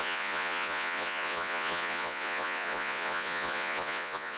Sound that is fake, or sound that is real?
fake